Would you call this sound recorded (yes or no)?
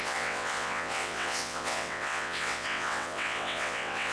no